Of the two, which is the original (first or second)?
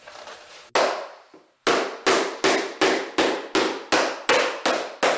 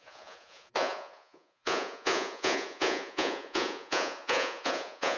first